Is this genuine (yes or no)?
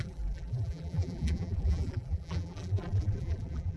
no